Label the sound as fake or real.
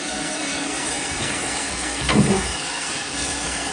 fake